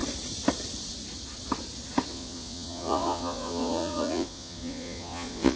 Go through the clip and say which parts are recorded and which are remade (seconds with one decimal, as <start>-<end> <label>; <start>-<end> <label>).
0.0-2.1 recorded; 2.1-5.6 remade